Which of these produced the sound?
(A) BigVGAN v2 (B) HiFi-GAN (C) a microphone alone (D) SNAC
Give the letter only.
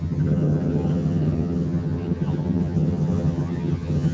B